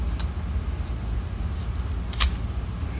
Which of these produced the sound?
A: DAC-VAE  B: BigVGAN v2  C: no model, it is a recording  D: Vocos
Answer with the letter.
C